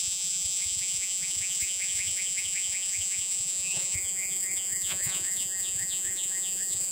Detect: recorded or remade remade